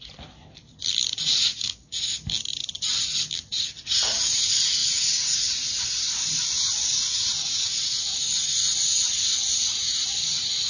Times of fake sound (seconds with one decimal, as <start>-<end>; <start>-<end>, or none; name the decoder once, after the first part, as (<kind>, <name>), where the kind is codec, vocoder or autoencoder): 1.5-2.0 (codec, DAC)

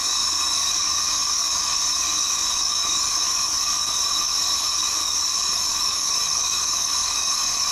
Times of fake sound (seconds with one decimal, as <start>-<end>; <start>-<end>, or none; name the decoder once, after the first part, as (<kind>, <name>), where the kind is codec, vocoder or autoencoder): 0.0-7.7 (codec, DAC)

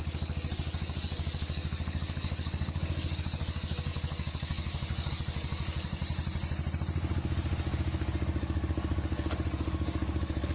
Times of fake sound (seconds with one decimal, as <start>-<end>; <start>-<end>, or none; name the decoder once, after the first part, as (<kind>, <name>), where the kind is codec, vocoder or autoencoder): 0.0-6.0 (codec, DAC); 7.1-10.5

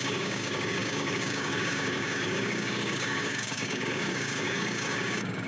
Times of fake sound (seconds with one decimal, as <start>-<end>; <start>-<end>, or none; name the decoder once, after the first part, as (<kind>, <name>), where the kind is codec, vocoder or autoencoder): 0.0-5.5 (codec, DAC)

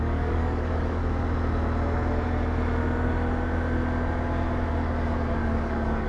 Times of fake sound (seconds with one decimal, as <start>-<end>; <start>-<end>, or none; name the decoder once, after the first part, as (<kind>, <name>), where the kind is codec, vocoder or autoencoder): 0.0-1.0 (codec, DAC); 4.7-6.1

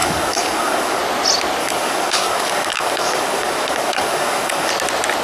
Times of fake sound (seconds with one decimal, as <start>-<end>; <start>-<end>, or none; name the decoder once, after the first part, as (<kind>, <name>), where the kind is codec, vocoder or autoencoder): 0.0-1.0 (codec, DAC); 1.6-4.7

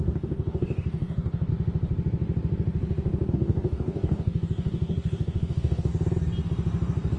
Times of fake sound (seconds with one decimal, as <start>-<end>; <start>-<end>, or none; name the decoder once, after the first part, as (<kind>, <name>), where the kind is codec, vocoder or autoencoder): 0.0-1.5 (codec, DAC); 3.3-5.9